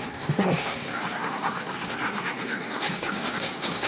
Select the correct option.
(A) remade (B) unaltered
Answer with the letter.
A